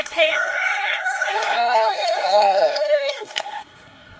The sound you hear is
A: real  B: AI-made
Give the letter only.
B